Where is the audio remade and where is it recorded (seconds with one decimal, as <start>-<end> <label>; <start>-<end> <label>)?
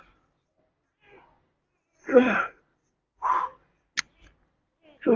0.0-2.0 recorded; 2.0-2.6 remade; 2.6-5.2 recorded